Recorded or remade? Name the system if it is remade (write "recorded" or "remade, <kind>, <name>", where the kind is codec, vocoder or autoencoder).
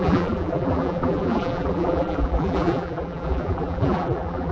remade, vocoder, BigVGAN v2